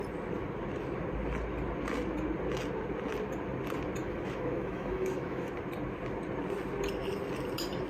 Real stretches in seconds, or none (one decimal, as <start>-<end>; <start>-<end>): 0.0-4.0; 5.5-7.9